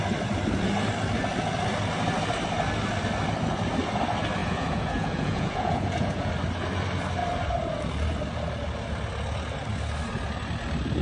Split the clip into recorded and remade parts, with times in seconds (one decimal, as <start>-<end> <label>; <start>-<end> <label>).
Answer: 0.0-4.4 recorded; 4.4-6.3 remade; 6.3-11.0 recorded